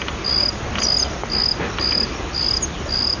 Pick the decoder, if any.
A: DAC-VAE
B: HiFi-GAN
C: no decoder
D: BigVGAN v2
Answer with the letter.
C